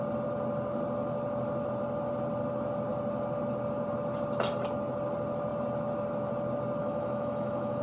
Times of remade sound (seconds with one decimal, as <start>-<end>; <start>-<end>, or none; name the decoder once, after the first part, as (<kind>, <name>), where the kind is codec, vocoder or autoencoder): 6.8-7.8 (autoencoder, DAC-VAE)